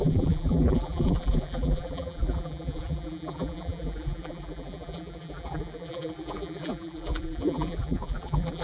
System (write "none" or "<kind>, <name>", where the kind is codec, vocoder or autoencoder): vocoder, BigVGAN v2